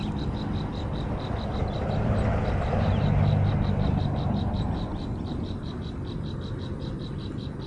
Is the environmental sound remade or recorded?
recorded